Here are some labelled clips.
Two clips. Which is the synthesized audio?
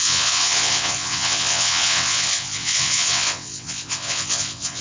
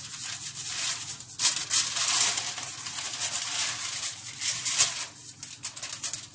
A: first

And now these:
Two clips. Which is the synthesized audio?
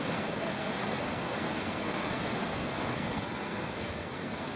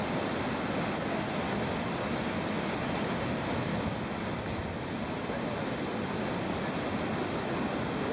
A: first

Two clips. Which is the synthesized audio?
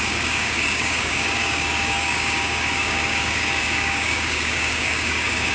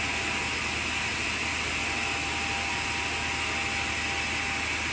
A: first